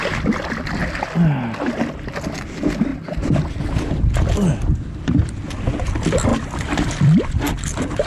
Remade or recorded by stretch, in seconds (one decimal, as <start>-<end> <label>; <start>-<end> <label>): 0.0-2.9 recorded; 2.9-3.8 remade; 3.8-6.3 recorded; 6.3-8.1 remade